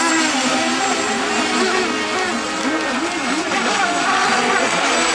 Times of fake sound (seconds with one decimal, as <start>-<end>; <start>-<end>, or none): none